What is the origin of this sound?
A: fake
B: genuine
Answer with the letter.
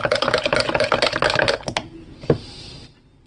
B